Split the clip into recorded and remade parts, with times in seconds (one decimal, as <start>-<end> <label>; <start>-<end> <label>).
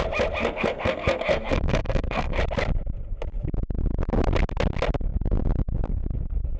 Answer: 0.0-0.4 recorded; 0.4-2.4 remade; 2.4-6.6 recorded